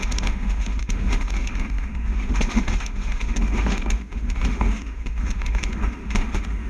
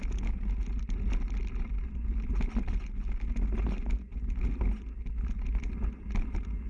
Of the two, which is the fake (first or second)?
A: first